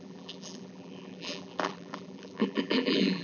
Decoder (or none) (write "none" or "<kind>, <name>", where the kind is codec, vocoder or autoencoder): vocoder, BigVGAN v2